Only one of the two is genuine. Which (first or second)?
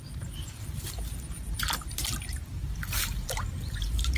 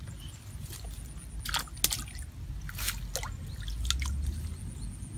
second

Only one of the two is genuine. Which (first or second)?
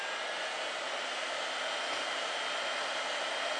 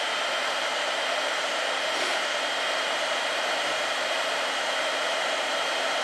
first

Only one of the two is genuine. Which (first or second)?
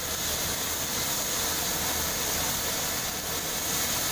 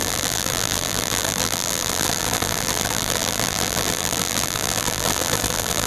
first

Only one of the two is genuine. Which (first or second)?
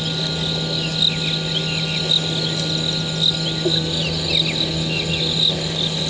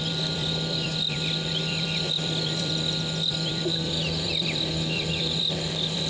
first